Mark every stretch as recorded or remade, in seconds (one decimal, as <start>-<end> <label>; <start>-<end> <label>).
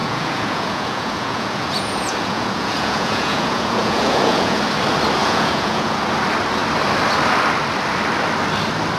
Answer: 0.0-4.6 remade; 4.6-5.2 recorded; 5.2-6.0 remade; 6.0-9.0 recorded